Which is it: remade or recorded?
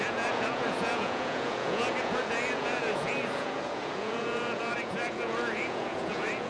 remade